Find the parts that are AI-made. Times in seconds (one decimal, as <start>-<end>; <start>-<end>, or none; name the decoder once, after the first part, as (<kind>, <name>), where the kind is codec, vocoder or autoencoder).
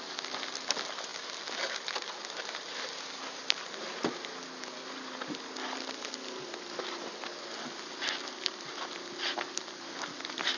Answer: none